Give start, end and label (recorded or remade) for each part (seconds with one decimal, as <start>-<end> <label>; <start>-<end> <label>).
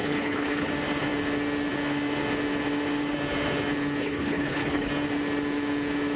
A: 0.0-0.7 remade; 0.7-4.0 recorded; 4.0-4.9 remade; 4.9-6.2 recorded